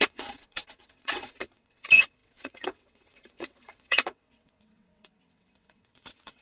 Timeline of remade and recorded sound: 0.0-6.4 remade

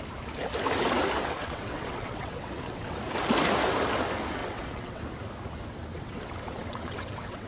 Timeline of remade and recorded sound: 0.0-1.4 recorded; 1.4-3.0 remade; 3.0-4.4 recorded; 4.4-5.0 remade; 5.0-5.9 recorded; 5.9-7.5 remade

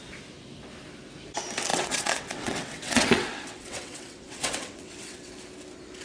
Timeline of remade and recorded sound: 0.0-1.7 recorded; 1.7-5.3 remade; 5.3-6.0 recorded

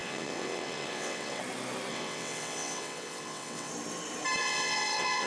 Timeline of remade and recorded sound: 0.0-1.4 remade; 1.4-1.9 recorded; 1.9-3.7 remade; 3.7-4.4 recorded; 4.4-5.3 remade

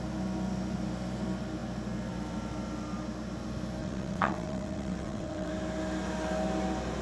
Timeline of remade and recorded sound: 0.0-3.8 recorded; 3.8-5.5 remade; 5.5-7.0 recorded